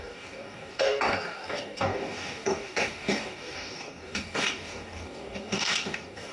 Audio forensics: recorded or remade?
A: remade